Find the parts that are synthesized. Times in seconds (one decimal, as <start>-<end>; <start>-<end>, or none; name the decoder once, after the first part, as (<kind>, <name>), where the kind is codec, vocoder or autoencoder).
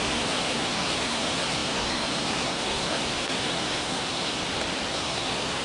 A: 0.0-4.4 (codec, SNAC); 4.9-5.6